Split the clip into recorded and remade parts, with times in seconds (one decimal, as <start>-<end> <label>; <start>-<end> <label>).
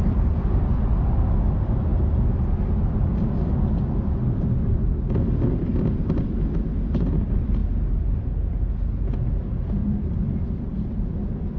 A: 0.0-1.9 remade; 1.9-5.6 recorded; 5.6-7.6 remade; 7.6-9.7 recorded; 9.7-11.6 remade